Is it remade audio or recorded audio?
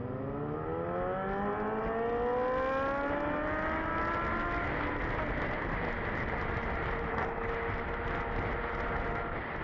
recorded